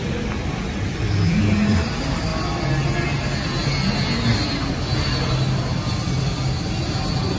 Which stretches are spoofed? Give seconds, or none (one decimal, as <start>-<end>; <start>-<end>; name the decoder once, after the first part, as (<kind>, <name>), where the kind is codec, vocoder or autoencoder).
none